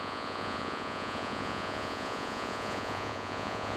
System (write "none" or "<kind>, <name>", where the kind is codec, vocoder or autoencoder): vocoder, Vocos